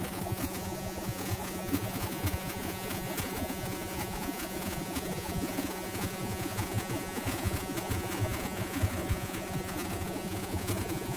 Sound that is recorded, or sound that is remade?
remade